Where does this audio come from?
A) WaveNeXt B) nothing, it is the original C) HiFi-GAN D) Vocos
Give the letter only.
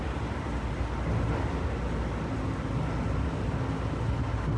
B